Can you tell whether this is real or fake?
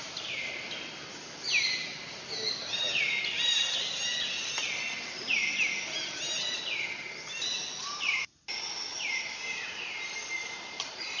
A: real